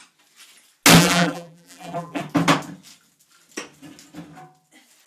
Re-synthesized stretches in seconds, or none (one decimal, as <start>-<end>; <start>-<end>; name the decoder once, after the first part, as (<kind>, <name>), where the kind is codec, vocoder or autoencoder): 1.0-2.2 (vocoder, BigVGAN v2)